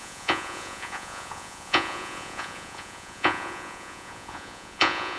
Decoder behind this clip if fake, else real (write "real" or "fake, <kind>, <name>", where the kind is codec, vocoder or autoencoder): fake, vocoder, Vocos